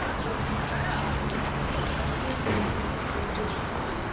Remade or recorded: recorded